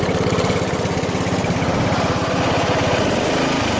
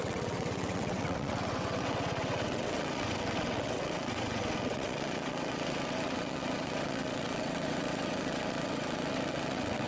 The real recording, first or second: first